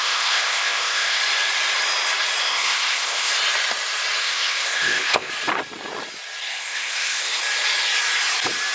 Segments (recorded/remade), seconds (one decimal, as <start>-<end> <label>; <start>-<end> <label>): 0.0-1.2 remade; 1.2-2.4 recorded; 2.4-3.3 remade; 3.3-4.2 recorded; 4.2-5.3 remade; 5.3-6.5 recorded; 6.5-7.4 remade; 7.4-8.7 recorded